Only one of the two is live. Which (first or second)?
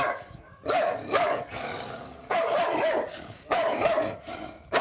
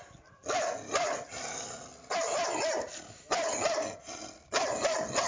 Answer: second